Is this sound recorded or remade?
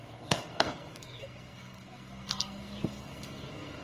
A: remade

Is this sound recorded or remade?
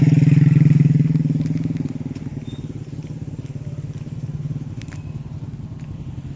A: recorded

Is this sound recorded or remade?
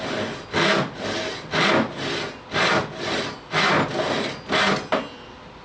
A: recorded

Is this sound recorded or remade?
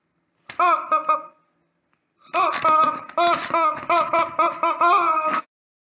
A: recorded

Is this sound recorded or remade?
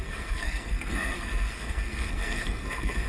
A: remade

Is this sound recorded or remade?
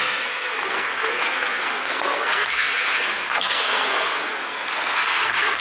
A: remade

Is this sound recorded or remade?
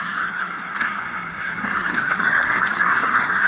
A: remade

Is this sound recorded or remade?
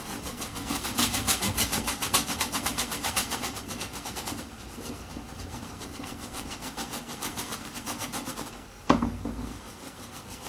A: remade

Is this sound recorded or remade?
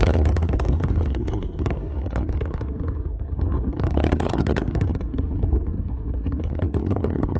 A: remade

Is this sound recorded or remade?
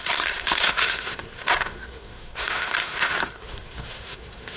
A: remade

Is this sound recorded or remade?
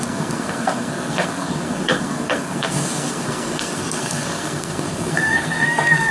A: remade